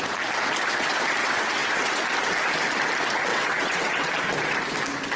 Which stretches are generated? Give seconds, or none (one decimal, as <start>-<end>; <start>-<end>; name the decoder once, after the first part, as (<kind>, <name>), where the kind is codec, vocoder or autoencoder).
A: 1.2-1.9 (vocoder, WaveNeXt); 3.3-4.1